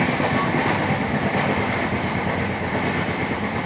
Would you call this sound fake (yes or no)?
no